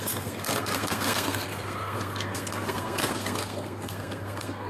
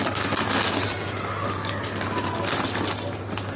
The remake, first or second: first